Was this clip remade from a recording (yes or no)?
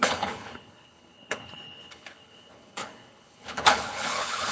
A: yes